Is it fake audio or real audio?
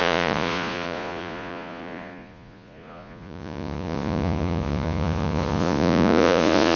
fake